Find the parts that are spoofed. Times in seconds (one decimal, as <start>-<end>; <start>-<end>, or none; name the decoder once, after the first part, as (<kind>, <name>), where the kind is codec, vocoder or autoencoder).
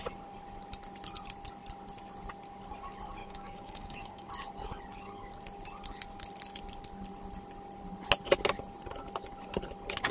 3.2-4.3 (codec, DAC)